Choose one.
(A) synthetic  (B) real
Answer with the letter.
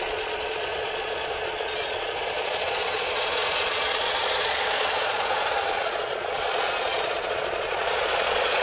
A